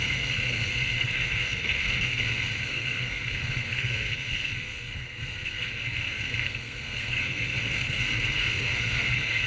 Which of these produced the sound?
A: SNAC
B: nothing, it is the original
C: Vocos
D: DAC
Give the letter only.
A